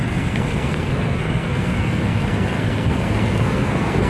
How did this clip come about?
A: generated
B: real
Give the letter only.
A